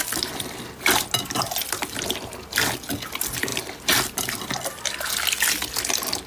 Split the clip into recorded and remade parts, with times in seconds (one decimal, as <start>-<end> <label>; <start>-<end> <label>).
0.0-3.5 recorded; 3.5-5.2 remade; 5.2-6.3 recorded